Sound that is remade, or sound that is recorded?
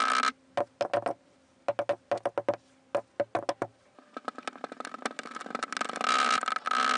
recorded